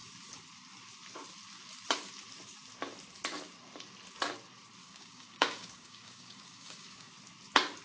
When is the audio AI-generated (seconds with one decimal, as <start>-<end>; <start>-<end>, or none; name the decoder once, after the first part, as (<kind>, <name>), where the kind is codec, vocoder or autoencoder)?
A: 4.8-7.1 (codec, DAC)